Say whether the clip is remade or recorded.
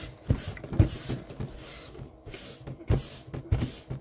recorded